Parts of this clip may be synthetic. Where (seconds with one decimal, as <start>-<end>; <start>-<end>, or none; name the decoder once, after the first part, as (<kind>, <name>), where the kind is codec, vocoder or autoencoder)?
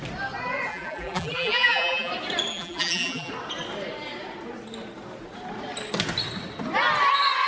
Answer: 0.7-2.1 (vocoder, BigVGAN v2); 2.5-3.3